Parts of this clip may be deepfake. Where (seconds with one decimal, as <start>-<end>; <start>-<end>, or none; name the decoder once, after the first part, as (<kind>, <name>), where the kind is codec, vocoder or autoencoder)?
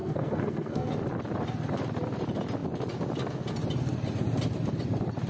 0.0-0.9 (codec, SNAC)